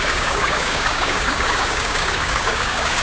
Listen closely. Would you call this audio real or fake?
fake